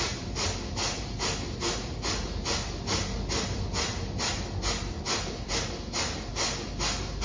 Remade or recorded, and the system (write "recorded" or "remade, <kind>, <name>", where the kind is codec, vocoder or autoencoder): recorded